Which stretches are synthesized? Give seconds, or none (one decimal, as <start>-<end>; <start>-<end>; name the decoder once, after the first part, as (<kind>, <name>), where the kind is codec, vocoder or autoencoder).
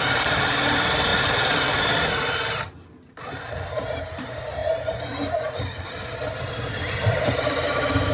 0.0-1.1 (vocoder, BigVGAN v2); 3.8-4.6; 6.9-8.1